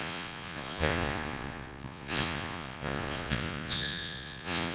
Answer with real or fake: fake